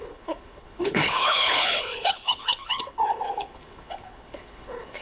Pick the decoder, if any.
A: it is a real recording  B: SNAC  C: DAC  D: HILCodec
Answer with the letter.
D